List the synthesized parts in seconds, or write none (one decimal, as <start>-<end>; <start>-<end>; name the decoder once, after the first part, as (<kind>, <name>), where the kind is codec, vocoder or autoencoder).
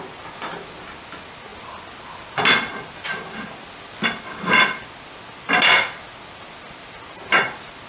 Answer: none